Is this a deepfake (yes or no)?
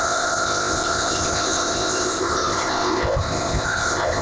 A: yes